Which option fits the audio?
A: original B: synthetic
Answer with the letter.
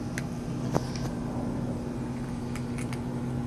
A